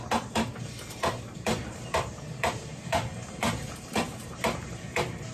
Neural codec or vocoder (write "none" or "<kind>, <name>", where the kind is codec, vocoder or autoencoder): vocoder, BigVGAN v2